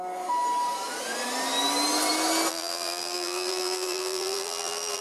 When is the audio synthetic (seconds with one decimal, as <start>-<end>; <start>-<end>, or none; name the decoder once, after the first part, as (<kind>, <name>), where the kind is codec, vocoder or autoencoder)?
2.5-5.0 (vocoder, BigVGAN v2)